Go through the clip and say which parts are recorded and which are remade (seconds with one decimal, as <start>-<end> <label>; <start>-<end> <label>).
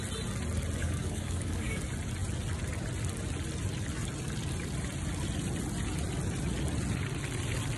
0.0-0.8 recorded; 0.8-1.8 remade; 1.8-7.8 recorded